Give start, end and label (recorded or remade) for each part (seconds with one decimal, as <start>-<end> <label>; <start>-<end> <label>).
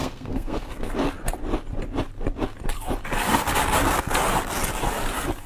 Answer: 0.0-0.9 remade; 0.9-5.5 recorded